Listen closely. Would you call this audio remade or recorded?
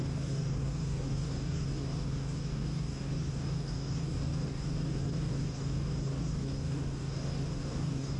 remade